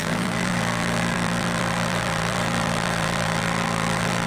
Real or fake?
fake